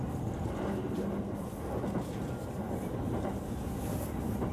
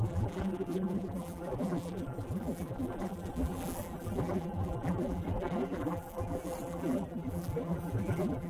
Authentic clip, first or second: first